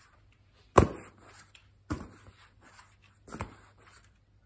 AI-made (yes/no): no